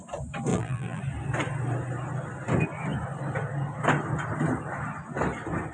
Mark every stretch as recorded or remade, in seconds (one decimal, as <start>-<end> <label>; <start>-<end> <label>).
0.0-0.5 recorded; 0.5-1.0 remade; 1.0-5.7 recorded